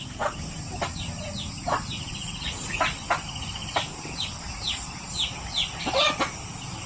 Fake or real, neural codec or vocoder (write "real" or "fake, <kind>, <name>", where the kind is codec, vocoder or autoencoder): real